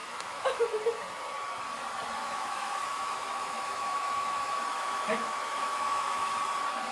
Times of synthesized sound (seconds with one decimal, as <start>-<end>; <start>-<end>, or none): 0.0-0.6; 2.2-6.3